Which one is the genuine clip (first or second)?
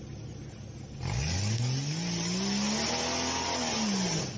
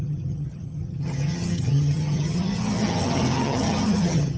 first